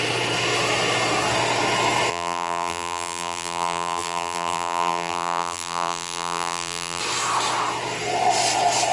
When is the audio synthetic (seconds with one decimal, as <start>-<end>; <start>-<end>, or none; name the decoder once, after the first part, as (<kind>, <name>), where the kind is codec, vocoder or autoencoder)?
2.1-7.0 (vocoder, BigVGAN v2)